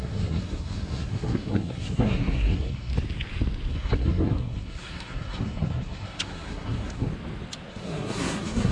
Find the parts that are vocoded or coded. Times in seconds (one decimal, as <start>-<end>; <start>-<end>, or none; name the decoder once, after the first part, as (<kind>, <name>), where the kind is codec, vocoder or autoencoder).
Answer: 0.0-2.9 (codec, SNAC); 3.7-7.1; 7.7-8.7